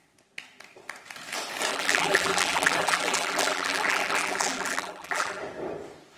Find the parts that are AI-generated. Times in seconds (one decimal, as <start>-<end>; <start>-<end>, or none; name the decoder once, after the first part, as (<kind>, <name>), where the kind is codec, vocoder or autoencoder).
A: 1.7-5.4 (vocoder, BigVGAN v2)